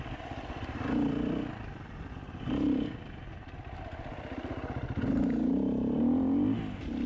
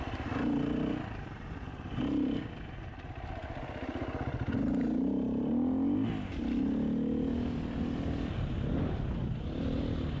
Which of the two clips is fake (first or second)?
first